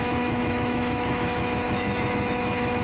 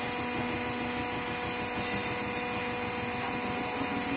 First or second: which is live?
second